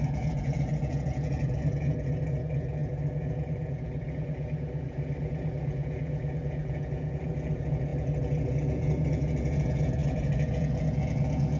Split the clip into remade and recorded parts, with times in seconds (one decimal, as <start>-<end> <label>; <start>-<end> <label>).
0.0-11.6 remade

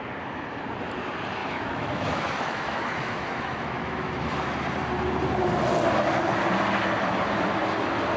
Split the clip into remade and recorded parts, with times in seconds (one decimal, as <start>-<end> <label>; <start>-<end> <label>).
0.0-1.4 recorded; 1.4-4.1 remade; 4.1-8.2 recorded

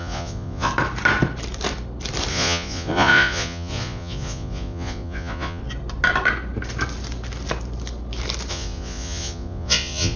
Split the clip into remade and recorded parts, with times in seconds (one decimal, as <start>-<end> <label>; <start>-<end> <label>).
0.0-0.7 remade; 0.7-2.3 recorded; 2.3-5.6 remade; 5.6-8.5 recorded; 8.5-10.2 remade